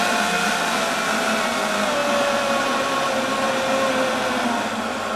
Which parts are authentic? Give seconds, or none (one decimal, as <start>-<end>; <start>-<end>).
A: 0.0-5.2